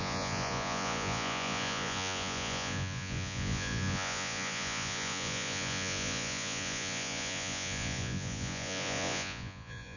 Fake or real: fake